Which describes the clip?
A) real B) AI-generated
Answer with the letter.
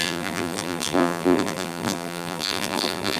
B